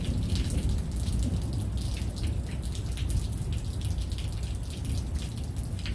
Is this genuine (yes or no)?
yes